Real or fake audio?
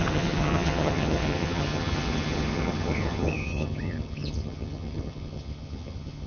fake